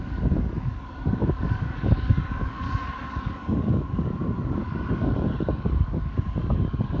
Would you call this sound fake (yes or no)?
yes